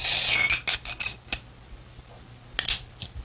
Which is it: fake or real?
real